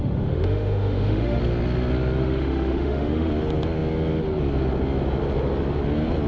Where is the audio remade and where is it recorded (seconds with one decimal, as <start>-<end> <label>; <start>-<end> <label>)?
0.0-1.4 remade; 1.4-2.2 recorded; 2.2-3.3 remade; 3.3-6.3 recorded